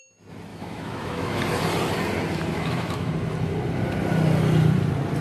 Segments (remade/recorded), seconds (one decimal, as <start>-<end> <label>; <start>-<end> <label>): 0.0-0.5 recorded; 0.5-1.4 remade; 1.4-2.5 recorded; 2.5-3.1 remade; 3.1-5.2 recorded